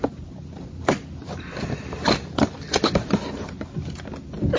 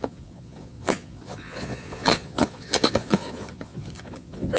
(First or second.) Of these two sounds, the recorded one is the first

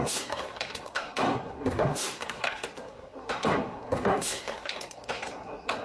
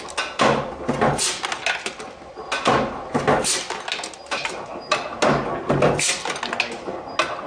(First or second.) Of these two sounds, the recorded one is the second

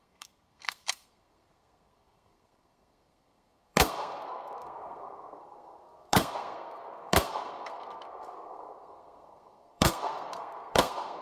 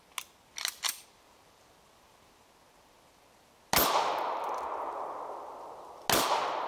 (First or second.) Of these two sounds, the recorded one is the second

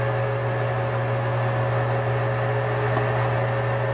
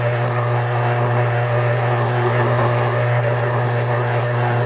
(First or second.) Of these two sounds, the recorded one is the first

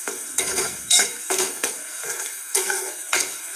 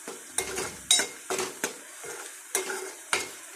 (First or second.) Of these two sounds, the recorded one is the second